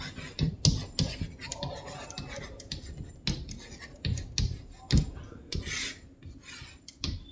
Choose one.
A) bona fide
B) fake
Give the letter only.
A